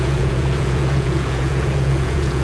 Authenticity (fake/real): fake